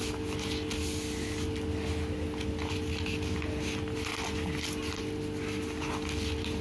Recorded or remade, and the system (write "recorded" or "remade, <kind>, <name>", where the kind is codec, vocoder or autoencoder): recorded